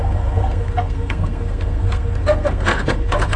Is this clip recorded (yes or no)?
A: no